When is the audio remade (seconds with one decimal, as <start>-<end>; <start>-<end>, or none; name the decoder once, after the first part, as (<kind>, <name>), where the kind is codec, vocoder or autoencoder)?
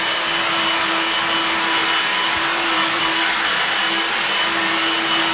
2.5-3.0 (vocoder, BigVGAN v2)